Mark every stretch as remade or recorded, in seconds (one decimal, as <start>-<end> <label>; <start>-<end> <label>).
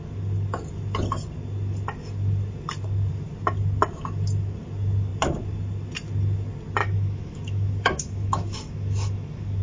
0.0-6.8 recorded; 6.8-9.6 remade